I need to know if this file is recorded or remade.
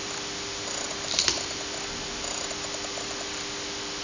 remade